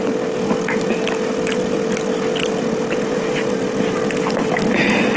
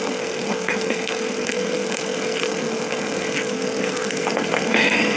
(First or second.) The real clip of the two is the first